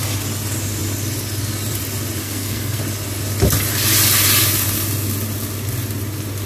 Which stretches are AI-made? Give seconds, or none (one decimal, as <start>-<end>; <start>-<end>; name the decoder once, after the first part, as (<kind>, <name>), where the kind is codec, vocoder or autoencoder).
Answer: 2.2-2.8 (codec, SNAC)